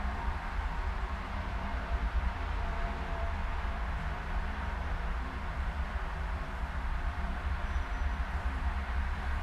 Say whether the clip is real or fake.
fake